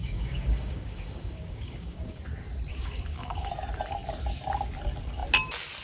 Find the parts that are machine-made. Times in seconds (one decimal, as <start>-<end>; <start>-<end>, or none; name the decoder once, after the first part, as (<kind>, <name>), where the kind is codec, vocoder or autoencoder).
0.0-2.2 (codec, DAC); 2.7-3.5

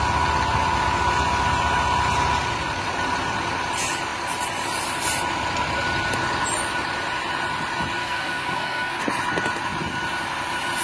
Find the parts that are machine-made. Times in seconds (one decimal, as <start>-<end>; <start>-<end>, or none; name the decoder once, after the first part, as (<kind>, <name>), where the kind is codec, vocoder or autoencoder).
8.0-9.0 (codec, SNAC)

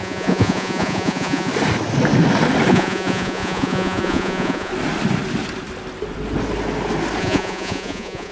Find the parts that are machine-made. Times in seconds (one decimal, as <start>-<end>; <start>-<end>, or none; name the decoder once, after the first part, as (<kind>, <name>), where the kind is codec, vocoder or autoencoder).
0.0-1.5 (vocoder, Vocos); 2.7-4.7; 7.2-8.3